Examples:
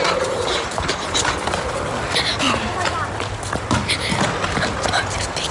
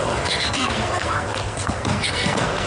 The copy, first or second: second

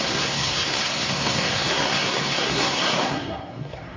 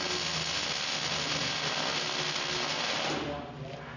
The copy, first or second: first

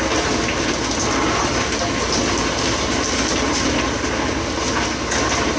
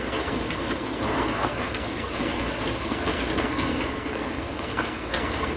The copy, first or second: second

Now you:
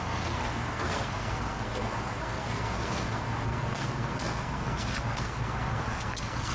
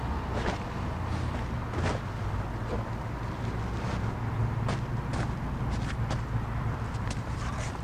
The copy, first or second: first